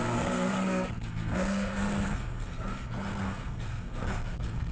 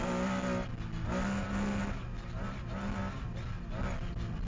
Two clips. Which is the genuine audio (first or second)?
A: second